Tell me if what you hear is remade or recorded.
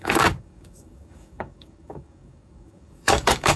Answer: remade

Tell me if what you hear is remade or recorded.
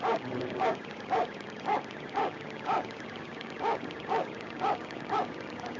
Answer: remade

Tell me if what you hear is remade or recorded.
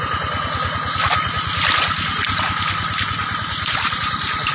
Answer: recorded